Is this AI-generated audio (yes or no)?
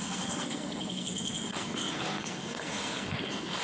yes